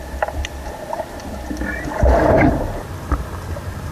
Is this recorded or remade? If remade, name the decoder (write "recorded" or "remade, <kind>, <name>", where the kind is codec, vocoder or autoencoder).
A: recorded